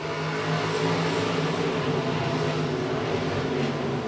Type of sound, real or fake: real